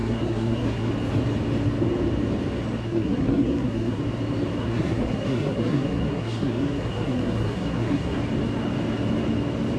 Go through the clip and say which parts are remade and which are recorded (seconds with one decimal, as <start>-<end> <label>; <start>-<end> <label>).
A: 0.0-0.9 remade; 0.9-2.8 recorded; 2.8-4.0 remade; 4.0-4.6 recorded; 4.6-8.2 remade; 8.2-9.8 recorded